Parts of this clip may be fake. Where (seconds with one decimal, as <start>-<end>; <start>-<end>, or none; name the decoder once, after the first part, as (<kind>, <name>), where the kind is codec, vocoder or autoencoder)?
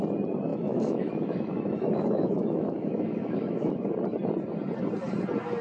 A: 0.5-3.9 (autoencoder, DAC-VAE)